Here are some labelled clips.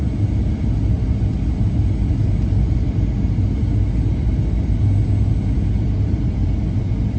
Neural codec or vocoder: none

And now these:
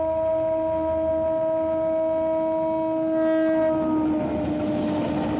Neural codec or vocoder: none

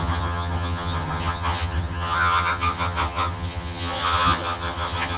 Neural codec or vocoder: vocoder, HiFi-GAN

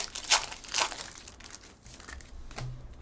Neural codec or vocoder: none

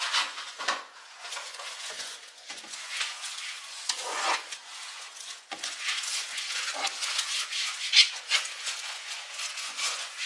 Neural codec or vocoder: vocoder, Vocos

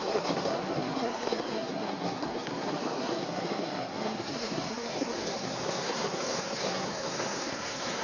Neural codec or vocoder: codec, SNAC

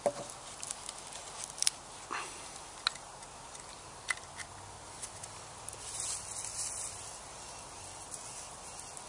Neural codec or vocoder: none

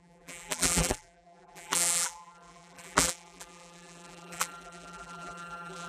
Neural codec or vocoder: vocoder, BigVGAN v2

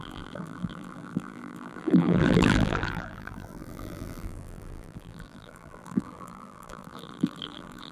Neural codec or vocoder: vocoder, BigVGAN v2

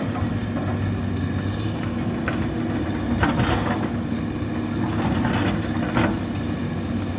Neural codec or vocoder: none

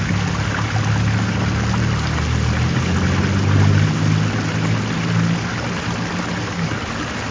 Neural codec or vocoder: none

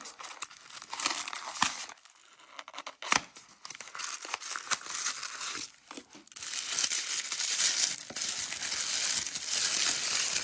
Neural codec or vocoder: none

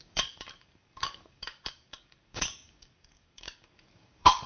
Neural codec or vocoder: codec, DAC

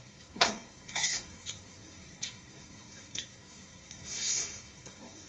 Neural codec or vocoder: codec, SNAC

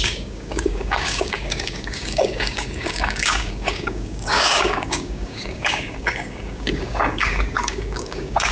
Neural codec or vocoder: codec, DAC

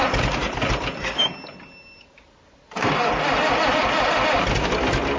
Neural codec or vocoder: none